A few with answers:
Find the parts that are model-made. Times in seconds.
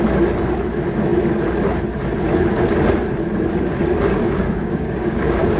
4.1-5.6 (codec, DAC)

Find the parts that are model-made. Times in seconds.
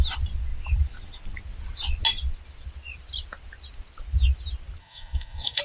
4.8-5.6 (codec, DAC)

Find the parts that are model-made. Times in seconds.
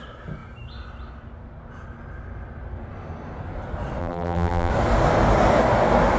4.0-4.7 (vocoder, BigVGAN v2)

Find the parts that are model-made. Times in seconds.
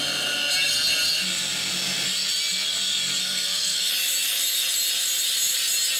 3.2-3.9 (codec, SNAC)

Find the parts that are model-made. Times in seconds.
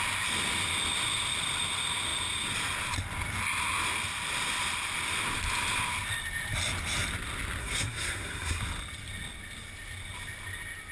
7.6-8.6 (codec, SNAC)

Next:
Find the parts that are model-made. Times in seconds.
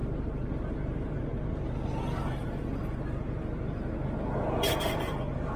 none